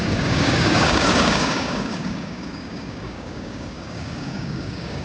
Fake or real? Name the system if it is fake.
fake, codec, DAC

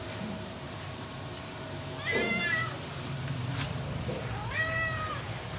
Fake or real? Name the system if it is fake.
fake, vocoder, BigVGAN v2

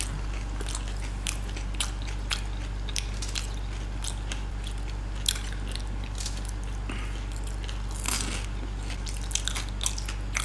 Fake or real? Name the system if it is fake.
real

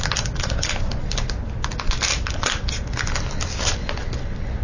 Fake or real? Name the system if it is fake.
real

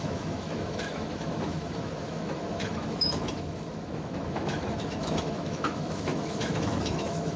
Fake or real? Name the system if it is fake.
fake, autoencoder, DAC-VAE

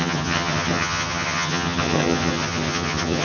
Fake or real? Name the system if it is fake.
fake, vocoder, HiFi-GAN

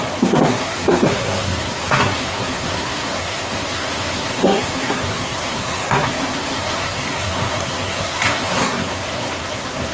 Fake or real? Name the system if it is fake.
fake, codec, SNAC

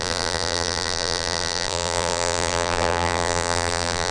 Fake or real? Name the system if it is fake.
fake, vocoder, BigVGAN v2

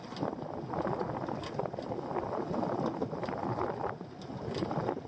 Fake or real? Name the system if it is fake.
real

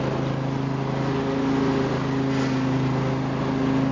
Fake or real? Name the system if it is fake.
real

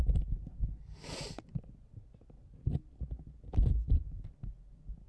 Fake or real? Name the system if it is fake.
real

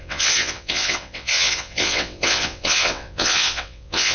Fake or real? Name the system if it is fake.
fake, vocoder, WaveNeXt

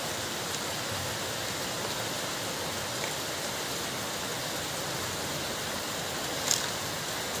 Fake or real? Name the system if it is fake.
real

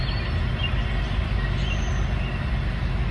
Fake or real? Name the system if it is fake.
real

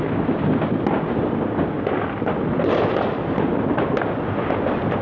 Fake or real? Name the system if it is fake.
real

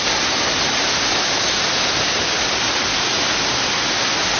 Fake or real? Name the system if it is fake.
real